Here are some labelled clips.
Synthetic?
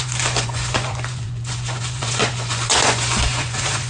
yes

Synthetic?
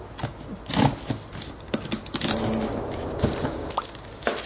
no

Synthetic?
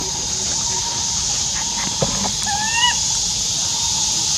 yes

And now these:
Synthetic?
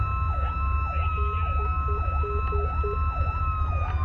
no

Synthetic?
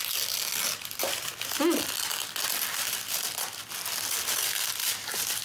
no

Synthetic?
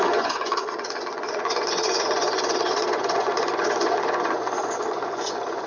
yes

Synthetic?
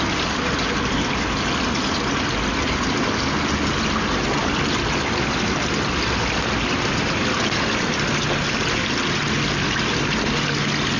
no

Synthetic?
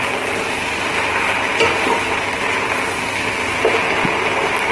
no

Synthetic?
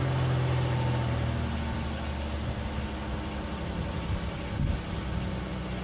no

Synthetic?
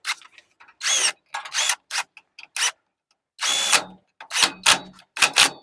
no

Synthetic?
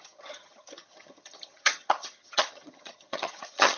yes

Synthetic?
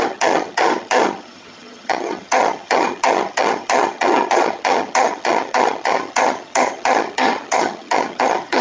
yes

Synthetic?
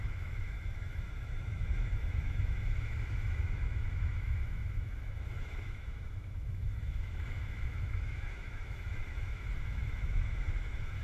yes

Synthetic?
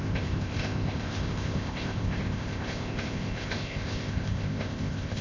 yes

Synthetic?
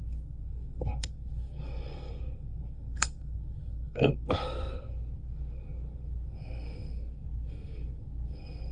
yes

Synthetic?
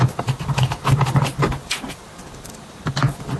no